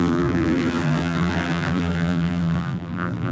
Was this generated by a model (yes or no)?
yes